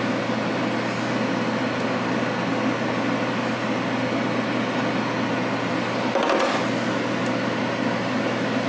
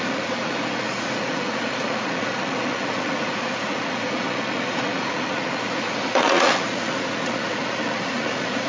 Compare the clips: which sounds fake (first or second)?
second